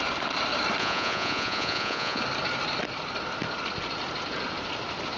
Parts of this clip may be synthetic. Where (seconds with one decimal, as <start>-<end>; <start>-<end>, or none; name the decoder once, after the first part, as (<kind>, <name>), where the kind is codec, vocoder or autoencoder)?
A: 0.8-2.2 (vocoder, Vocos)

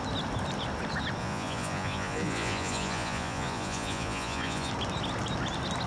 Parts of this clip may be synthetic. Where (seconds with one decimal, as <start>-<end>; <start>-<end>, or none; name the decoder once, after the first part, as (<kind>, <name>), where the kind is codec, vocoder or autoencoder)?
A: 1.2-4.7 (vocoder, Vocos)

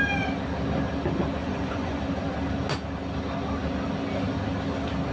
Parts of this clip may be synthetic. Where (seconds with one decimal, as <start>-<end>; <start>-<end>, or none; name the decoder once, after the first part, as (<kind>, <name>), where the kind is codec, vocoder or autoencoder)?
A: 1.4-2.0 (vocoder, Vocos)

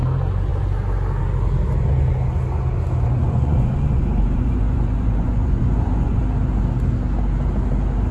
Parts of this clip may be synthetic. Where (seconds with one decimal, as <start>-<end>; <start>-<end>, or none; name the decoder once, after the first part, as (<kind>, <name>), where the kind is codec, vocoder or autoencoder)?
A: 3.2-6.2 (vocoder, Vocos)

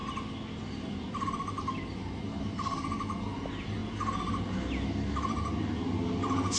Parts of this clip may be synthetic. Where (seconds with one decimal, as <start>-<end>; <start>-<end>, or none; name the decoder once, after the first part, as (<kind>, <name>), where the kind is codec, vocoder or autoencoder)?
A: none

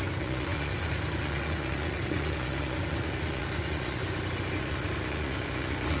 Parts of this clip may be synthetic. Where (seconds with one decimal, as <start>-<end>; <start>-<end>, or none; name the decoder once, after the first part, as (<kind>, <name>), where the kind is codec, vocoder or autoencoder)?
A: 0.0-4.0 (vocoder, Vocos); 4.6-6.0